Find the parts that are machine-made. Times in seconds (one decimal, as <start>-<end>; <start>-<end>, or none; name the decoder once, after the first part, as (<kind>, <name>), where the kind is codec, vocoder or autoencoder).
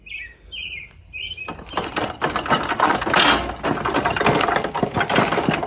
none